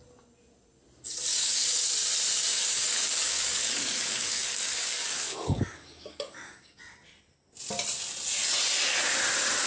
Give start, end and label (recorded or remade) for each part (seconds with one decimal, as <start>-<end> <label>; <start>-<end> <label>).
0.0-1.3 recorded; 1.3-1.9 remade; 1.9-2.5 recorded; 2.5-6.8 remade; 6.8-9.7 recorded